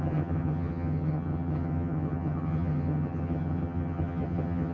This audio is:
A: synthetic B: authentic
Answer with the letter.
A